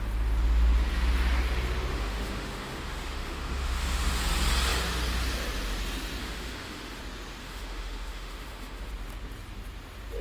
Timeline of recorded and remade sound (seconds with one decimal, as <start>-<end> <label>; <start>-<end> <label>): 0.0-1.9 recorded; 1.9-4.2 remade; 4.2-6.2 recorded; 6.2-7.0 remade; 7.0-7.4 recorded; 7.4-8.9 remade; 8.9-10.2 recorded